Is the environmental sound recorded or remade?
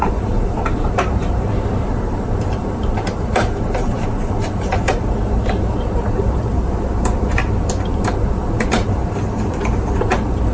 remade